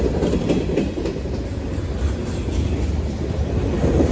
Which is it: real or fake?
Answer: real